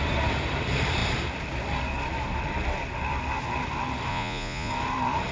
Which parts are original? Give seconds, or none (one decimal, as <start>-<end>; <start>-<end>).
0.0-4.1; 4.7-5.3